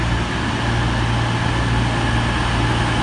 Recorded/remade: recorded